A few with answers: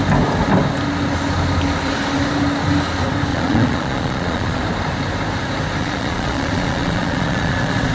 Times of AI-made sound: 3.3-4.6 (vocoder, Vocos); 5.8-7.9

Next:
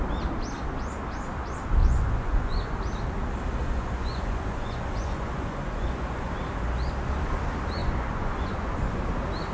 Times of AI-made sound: 1.8-2.8 (vocoder, Vocos); 3.6-6.3; 7.8-9.0

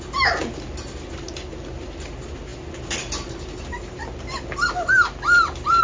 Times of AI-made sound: none

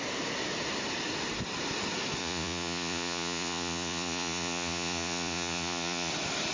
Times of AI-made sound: 2.2-6.1 (vocoder, Vocos)